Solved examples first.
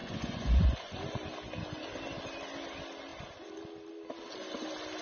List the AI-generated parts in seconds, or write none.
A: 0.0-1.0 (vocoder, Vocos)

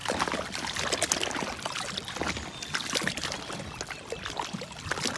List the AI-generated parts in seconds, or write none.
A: none

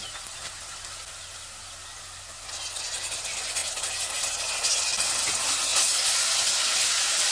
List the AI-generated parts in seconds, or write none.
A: none

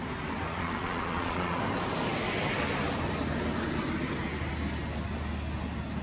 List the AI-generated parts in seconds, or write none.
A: 0.5-1.6 (vocoder, Vocos)

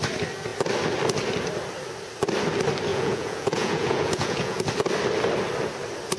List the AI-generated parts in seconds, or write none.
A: 2.9-4.6 (vocoder, Vocos)

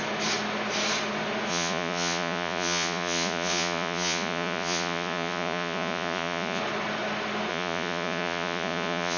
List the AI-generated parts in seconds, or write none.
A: 1.5-6.6 (vocoder, Vocos); 7.5-9.2

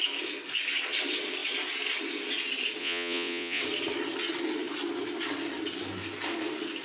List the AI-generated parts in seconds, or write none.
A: 2.8-3.6 (vocoder, Vocos)